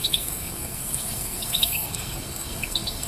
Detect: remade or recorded remade